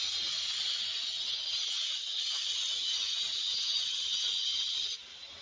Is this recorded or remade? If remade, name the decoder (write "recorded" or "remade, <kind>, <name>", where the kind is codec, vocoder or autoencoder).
recorded